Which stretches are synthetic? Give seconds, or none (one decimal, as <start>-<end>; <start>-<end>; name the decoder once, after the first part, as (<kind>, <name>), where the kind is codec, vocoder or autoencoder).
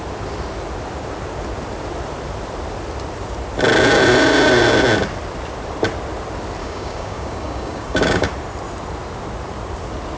6.6-8.3 (codec, DAC)